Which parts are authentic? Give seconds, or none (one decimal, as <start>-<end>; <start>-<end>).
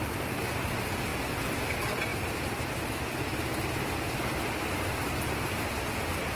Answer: 0.0-6.4